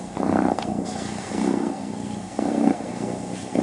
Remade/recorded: remade